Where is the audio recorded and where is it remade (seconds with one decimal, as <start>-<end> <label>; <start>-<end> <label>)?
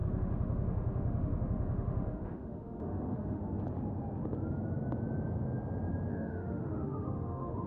0.0-3.4 remade; 3.4-6.1 recorded; 6.1-7.7 remade